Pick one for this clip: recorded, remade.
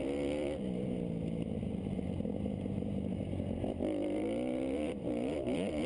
remade